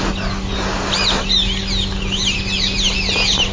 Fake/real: real